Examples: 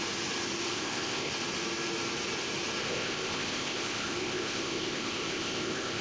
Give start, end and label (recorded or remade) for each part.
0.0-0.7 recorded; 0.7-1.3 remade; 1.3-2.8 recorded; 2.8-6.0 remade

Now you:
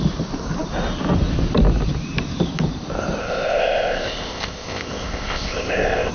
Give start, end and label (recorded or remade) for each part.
0.0-3.2 recorded; 3.2-6.1 remade

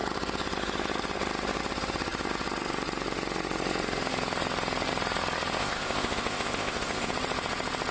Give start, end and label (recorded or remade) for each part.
0.0-5.6 recorded; 5.6-7.1 remade; 7.1-7.9 recorded

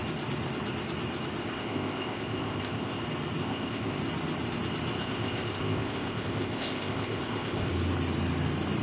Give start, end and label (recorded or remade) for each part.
0.0-1.4 recorded; 1.4-3.0 remade; 3.0-3.4 recorded; 3.4-4.0 remade; 4.0-5.0 recorded; 5.0-7.7 remade; 7.7-8.8 recorded

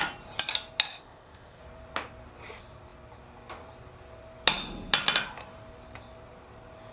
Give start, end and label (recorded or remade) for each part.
0.0-0.9 recorded; 0.9-1.6 remade; 1.6-6.9 recorded

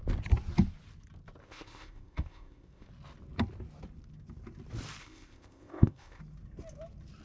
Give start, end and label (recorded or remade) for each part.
0.0-1.4 recorded; 1.4-2.9 remade; 2.9-5.0 recorded; 5.0-6.2 remade; 6.2-7.2 recorded